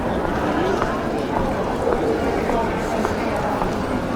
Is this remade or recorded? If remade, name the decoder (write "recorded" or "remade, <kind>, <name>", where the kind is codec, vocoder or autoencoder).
recorded